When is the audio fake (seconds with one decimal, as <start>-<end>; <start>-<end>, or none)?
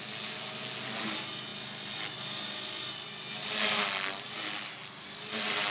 none